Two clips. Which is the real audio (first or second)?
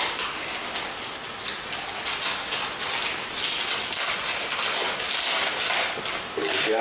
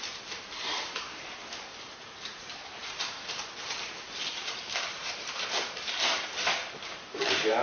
first